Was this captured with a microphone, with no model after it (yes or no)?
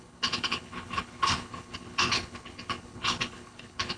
no